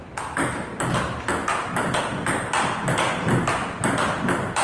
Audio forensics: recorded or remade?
recorded